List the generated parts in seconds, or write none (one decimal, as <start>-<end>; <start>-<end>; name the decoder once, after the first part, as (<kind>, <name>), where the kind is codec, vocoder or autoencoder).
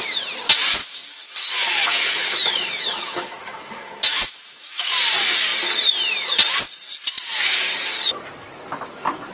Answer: 0.8-4.9 (autoencoder, DAC-VAE)